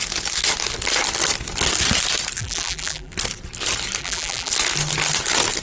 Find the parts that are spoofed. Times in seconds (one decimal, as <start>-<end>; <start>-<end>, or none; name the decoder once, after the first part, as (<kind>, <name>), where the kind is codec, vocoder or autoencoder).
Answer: 2.4-3.1 (vocoder, BigVGAN v2); 4.0-4.5